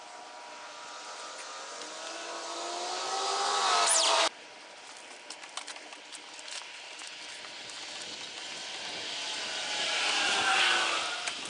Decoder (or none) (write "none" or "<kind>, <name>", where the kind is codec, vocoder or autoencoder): none